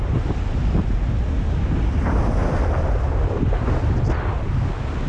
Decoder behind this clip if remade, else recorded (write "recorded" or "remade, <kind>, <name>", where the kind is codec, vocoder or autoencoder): recorded